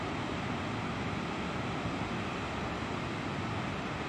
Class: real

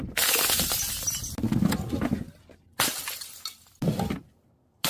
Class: real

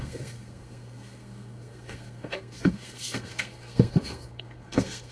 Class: fake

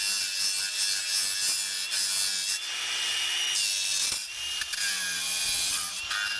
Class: real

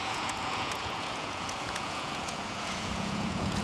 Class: fake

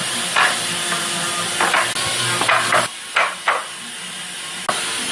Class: real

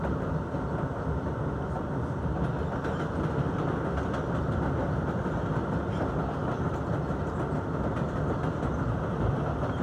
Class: real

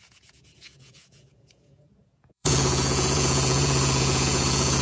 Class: fake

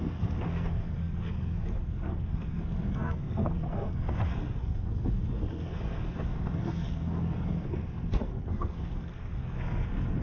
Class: fake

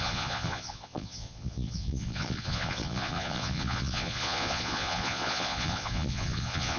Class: fake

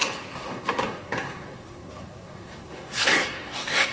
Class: fake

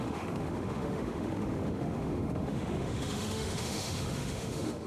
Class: fake